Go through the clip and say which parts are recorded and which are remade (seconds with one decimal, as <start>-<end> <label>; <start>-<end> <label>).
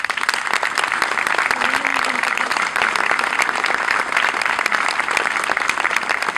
0.0-1.9 recorded; 1.9-2.8 remade; 2.8-6.4 recorded